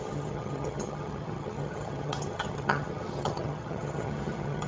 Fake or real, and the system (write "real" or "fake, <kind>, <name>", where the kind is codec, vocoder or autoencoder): fake, vocoder, HiFi-GAN